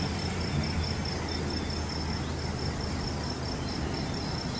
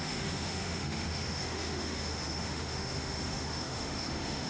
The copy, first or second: second